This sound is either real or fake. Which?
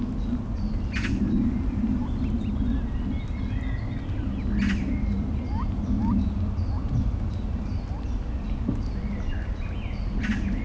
real